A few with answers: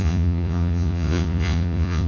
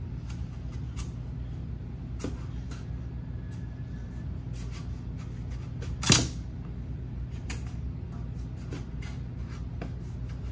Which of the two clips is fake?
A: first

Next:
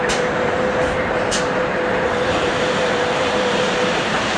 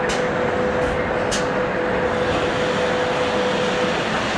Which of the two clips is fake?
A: first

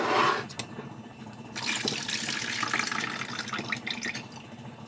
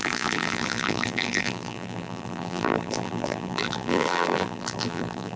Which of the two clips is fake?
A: second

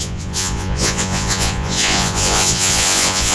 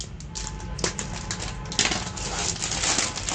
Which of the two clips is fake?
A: first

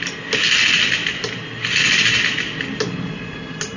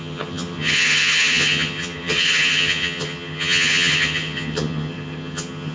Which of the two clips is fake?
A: second